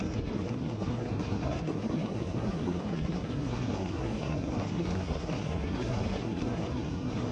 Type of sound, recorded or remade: remade